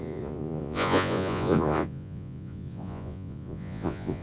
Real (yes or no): no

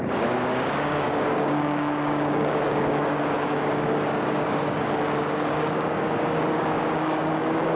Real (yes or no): no